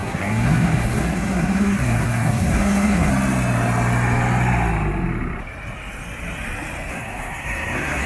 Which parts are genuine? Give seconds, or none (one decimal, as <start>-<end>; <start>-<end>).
3.1-6.9